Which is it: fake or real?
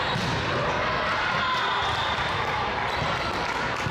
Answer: real